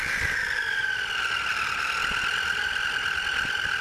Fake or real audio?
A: real